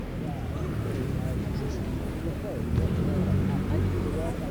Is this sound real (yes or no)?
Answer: yes